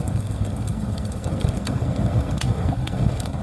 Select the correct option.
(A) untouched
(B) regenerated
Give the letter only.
B